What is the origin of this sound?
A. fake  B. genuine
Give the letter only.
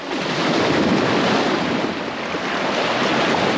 B